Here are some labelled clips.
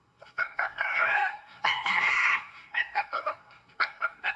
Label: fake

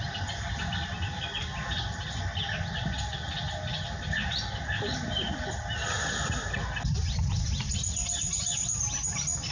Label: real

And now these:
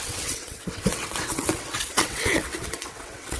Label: fake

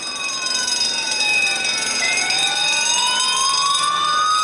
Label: fake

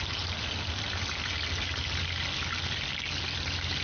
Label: real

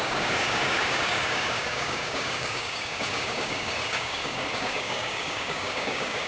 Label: fake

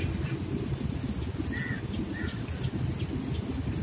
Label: real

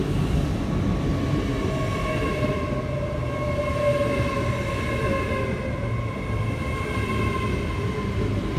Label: real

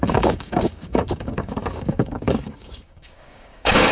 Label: fake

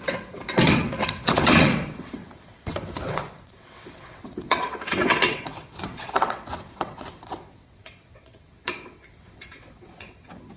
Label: fake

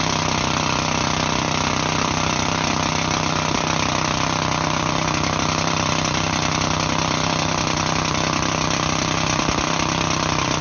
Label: real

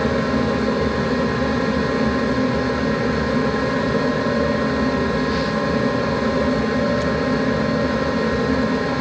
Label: real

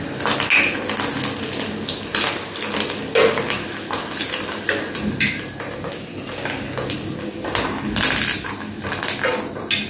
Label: real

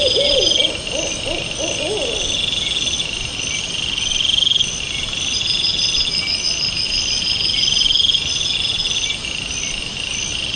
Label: real